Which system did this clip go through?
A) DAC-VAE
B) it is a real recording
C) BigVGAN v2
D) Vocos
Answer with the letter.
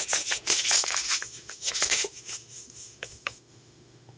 A